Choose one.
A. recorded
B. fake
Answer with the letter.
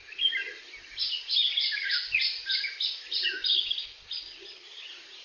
A